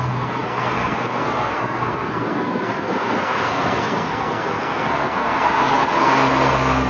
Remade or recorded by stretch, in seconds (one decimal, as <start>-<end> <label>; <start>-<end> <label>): 0.0-6.9 remade